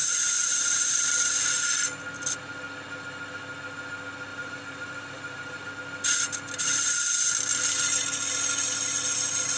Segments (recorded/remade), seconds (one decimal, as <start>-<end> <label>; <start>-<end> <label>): 0.0-1.1 remade; 1.1-4.3 recorded; 4.3-5.7 remade; 5.7-9.6 recorded